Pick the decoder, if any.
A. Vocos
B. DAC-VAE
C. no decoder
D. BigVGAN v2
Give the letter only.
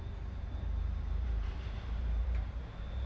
D